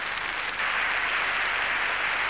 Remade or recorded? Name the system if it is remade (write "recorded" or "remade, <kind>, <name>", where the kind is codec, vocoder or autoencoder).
recorded